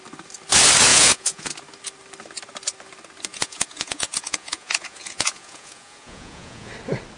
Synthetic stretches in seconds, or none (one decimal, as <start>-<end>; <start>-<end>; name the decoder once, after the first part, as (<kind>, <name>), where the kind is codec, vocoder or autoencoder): 0.9-1.5 (vocoder, Vocos); 3.3-6.7